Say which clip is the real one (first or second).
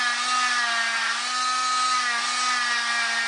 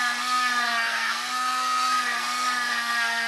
first